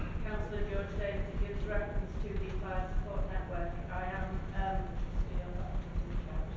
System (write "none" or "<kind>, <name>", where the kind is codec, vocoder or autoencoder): none